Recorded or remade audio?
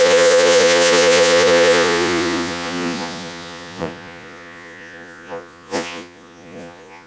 remade